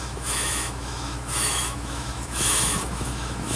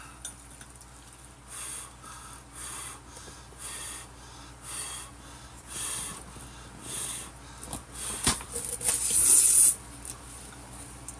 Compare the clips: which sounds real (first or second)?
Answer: second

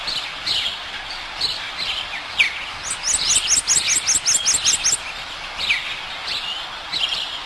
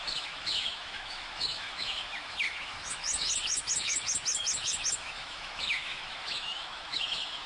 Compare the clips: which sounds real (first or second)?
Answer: first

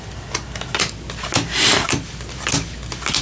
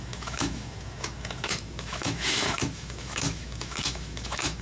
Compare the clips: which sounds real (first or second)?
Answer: first